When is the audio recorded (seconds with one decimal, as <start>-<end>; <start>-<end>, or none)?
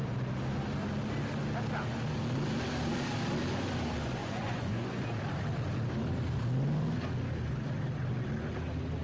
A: 0.0-4.2; 5.0-9.0